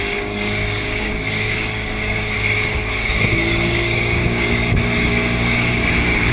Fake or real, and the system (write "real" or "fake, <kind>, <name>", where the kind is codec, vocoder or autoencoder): fake, codec, DAC